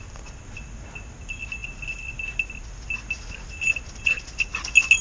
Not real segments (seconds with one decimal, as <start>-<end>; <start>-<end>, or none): none